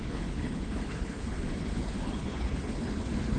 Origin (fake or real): fake